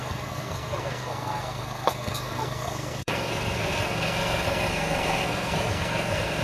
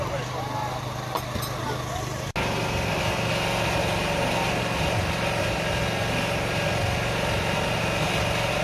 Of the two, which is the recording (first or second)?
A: second